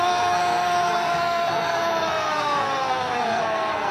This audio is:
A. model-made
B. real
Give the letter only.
A